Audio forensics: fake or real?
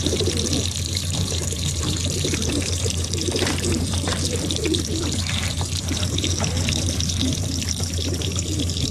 fake